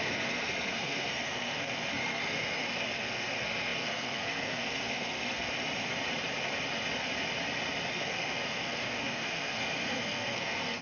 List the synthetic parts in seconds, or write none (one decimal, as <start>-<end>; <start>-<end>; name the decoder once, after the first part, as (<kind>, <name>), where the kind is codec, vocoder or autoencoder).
0.0-5.5 (codec, SNAC); 7.9-10.8